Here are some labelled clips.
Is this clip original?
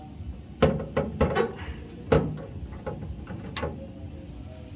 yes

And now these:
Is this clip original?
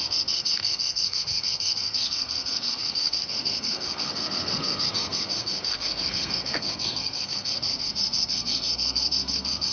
no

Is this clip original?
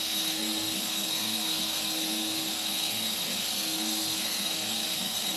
no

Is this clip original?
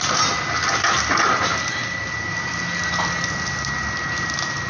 yes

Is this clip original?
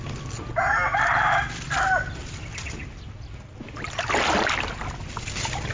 yes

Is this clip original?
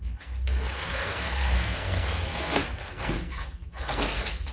no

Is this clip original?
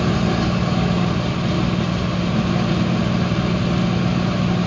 yes